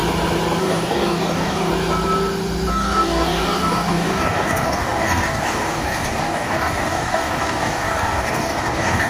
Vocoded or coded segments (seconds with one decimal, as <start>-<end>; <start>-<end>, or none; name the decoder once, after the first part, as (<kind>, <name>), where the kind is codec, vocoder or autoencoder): 0.6-1.7 (codec, DAC); 2.7-9.1